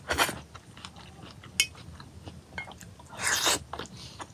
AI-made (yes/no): no